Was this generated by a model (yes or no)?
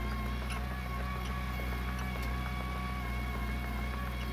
no